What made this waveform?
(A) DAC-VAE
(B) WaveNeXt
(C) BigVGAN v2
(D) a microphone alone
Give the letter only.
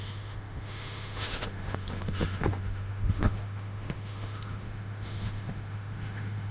A